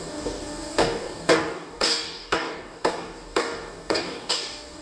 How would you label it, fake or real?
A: fake